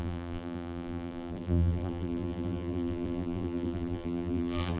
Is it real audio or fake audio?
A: fake